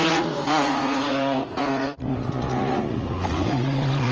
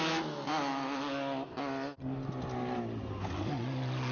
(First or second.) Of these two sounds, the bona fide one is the second